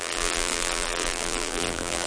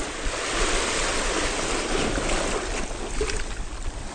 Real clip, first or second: second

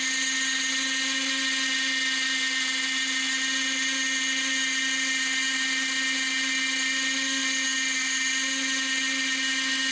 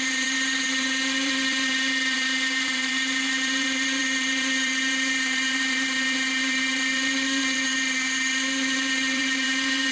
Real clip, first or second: first